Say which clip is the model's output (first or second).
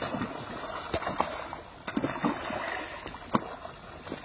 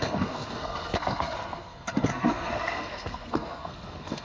second